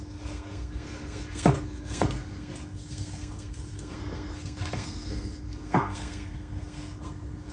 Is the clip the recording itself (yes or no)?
no